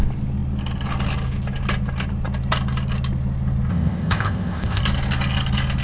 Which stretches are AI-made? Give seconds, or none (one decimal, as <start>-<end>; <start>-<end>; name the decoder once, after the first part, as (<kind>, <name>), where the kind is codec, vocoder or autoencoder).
3.7-4.8 (codec, ZipCodec)